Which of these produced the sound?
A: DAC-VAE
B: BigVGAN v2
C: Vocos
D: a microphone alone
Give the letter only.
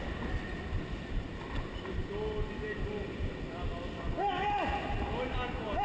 D